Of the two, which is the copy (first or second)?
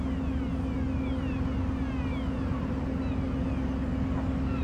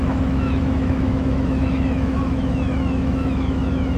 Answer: second